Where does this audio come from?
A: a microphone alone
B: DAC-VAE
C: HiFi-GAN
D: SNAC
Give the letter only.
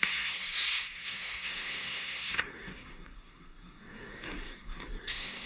D